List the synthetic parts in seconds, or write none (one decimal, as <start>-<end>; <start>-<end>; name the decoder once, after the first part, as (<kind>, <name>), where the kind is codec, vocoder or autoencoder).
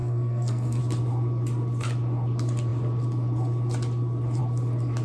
0.0-0.8 (codec, SNAC)